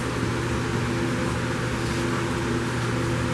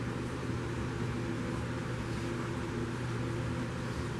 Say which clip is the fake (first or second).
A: second